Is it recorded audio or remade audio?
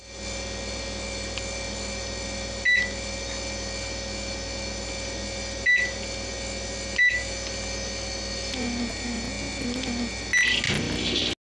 recorded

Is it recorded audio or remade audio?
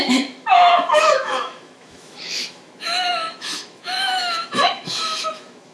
remade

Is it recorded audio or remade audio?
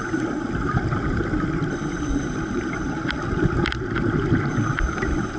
recorded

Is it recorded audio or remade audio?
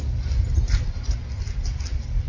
recorded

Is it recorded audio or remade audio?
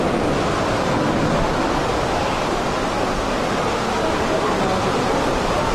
recorded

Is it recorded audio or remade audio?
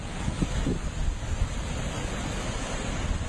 recorded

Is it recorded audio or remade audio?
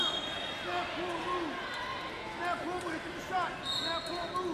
recorded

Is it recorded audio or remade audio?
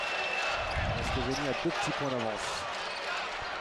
recorded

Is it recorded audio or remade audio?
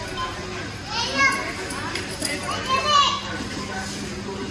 recorded